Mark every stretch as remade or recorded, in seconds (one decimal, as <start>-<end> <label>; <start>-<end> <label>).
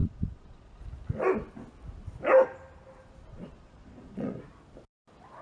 0.0-0.8 remade; 0.8-3.3 recorded; 3.3-4.4 remade; 4.4-5.4 recorded